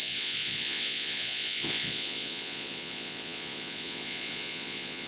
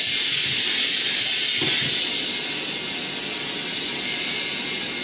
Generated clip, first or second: first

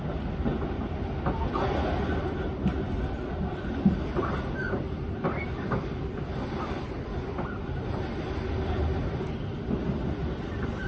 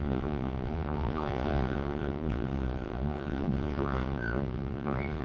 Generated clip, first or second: second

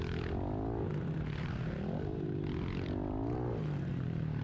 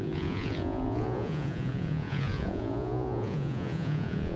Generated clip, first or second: second